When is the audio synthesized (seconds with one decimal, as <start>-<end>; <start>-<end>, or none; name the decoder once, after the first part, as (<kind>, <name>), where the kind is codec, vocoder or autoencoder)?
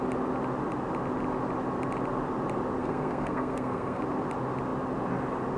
2.8-4.0 (codec, SNAC)